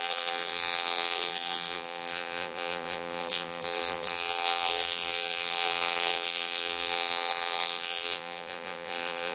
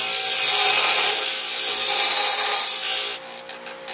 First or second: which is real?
second